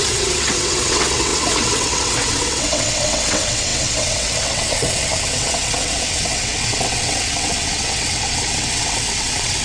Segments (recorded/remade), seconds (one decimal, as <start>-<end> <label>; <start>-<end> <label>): 0.0-9.6 remade